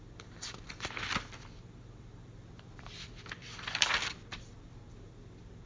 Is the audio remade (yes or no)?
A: yes